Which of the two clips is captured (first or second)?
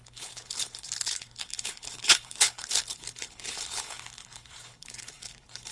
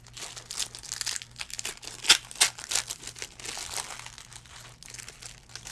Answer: second